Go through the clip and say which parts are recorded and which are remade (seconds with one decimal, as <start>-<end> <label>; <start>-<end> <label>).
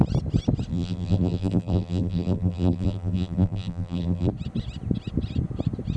0.0-0.7 recorded; 0.7-4.3 remade; 4.3-6.0 recorded